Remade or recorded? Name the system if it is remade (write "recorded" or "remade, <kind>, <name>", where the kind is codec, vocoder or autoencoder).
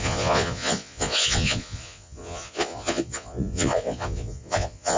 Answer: remade, vocoder, Vocos